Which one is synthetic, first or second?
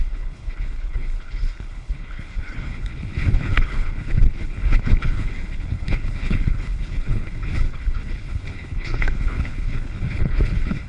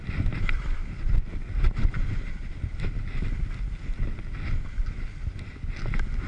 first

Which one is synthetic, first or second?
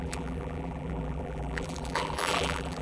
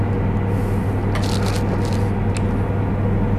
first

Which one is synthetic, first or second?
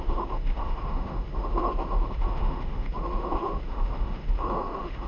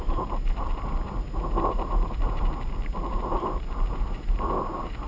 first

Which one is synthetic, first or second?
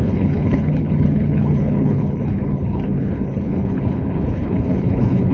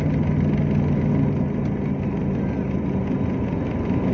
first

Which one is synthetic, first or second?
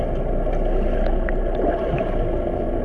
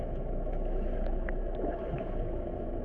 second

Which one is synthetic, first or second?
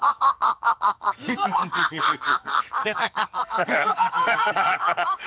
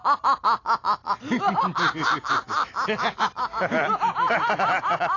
first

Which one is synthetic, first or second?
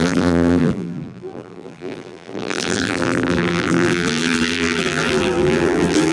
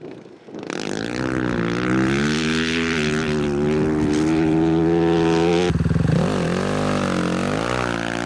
first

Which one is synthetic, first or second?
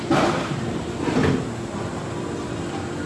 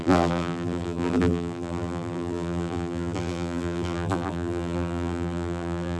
second